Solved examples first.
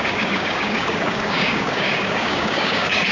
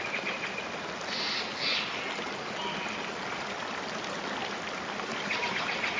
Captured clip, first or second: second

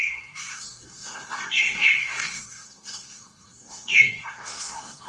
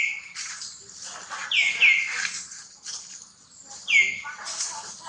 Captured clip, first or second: second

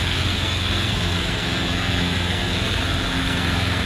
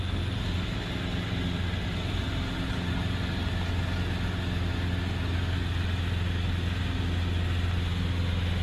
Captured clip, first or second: second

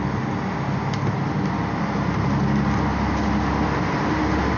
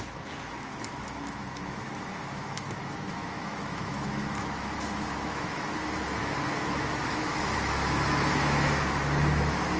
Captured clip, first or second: first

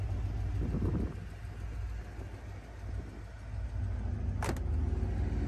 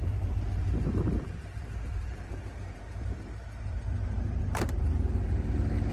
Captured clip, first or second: first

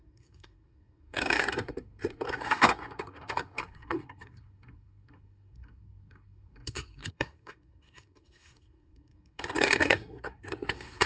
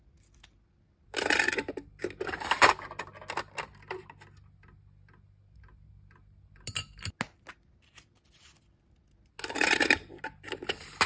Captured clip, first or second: second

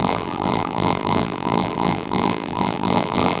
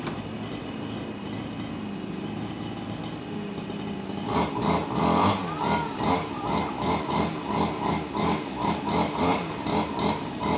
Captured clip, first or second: second